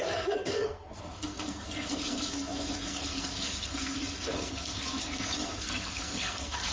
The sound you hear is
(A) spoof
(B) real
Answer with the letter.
A